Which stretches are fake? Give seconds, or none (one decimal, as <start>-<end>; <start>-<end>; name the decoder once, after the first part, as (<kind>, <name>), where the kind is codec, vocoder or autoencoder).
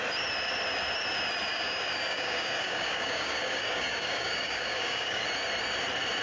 1.5-5.2 (codec, DAC)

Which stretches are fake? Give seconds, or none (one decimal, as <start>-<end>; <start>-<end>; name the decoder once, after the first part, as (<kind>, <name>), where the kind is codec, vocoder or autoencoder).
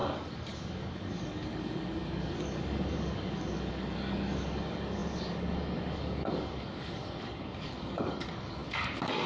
0.0-9.3 (codec, DAC)